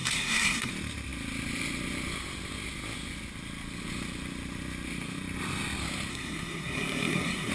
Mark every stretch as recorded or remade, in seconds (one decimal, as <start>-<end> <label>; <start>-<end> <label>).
0.0-0.7 remade; 0.7-6.1 recorded; 6.1-7.5 remade